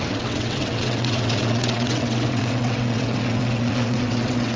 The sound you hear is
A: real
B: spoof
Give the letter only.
B